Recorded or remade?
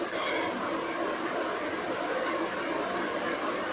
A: recorded